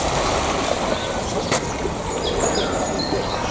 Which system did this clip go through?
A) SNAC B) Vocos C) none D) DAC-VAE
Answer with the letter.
C